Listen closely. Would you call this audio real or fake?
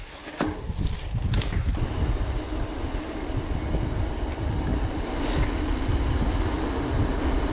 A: real